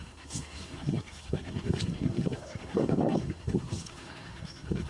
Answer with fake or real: fake